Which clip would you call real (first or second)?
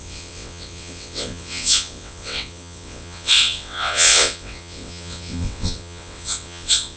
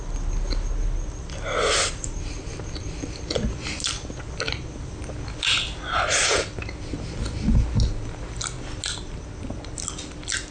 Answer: second